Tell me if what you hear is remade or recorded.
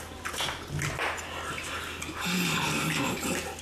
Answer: recorded